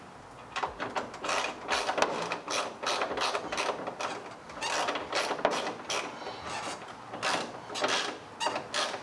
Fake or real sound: real